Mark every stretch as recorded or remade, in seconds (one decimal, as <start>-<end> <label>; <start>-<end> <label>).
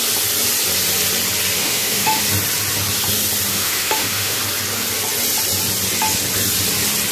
0.0-1.6 recorded; 1.6-2.2 remade; 2.2-3.5 recorded; 3.5-4.4 remade; 4.4-7.1 recorded